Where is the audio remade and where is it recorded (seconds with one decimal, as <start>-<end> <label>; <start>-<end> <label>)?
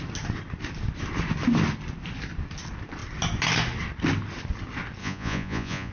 0.0-5.0 recorded; 5.0-5.9 remade